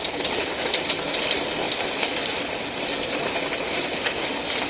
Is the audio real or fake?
real